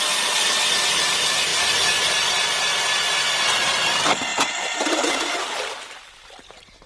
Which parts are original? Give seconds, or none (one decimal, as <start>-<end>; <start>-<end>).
0.0-1.5; 2.3-4.3; 6.4-6.9